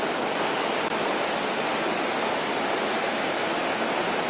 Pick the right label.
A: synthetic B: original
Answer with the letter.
B